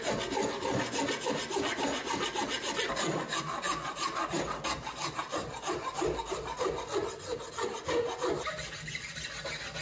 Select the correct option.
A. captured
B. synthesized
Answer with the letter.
A